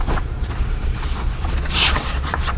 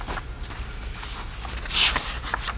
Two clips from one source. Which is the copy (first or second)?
first